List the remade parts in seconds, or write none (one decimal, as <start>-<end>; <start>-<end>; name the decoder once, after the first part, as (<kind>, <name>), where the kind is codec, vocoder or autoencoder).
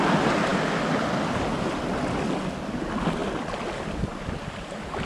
none